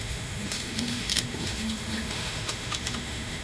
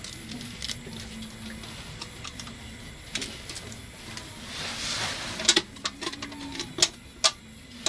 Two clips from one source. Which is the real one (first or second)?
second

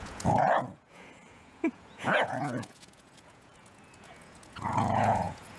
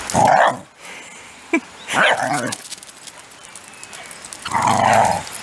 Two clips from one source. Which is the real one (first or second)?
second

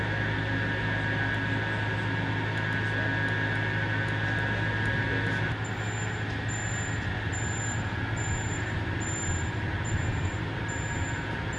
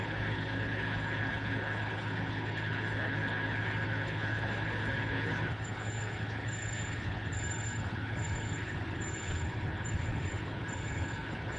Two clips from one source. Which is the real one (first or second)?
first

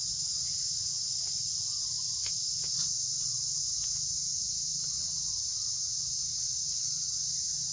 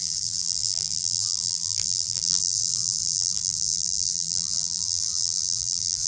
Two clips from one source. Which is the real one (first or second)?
first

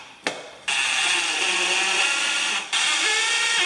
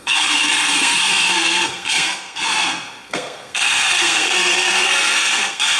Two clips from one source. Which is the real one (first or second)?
first